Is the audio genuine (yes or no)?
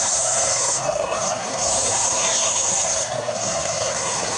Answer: no